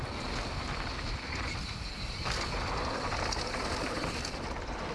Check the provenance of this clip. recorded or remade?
recorded